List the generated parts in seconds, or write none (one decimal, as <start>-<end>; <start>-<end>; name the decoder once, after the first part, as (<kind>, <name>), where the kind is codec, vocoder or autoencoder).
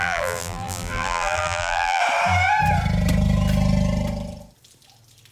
0.0-2.0 (vocoder, BigVGAN v2)